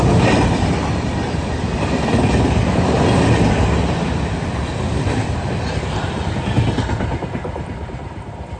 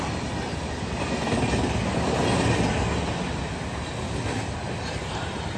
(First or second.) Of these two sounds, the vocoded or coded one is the first